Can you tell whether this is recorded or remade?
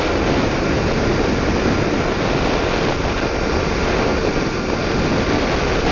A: recorded